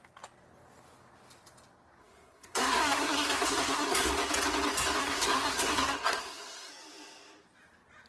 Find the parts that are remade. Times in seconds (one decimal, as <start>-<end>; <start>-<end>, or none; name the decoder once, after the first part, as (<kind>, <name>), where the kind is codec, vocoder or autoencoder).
2.0-4.1 (codec, SNAC); 5.0-6.7